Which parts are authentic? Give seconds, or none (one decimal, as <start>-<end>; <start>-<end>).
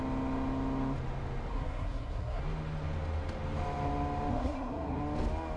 0.0-1.5; 2.4-4.3; 5.0-5.6